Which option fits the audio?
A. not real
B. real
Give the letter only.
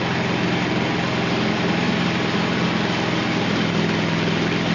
B